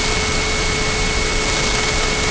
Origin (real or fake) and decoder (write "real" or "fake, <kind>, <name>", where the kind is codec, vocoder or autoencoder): real